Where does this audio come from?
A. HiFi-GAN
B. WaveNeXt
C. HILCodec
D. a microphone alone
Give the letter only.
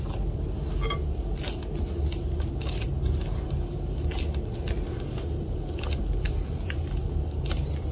D